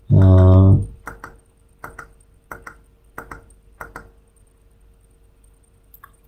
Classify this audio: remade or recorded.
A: recorded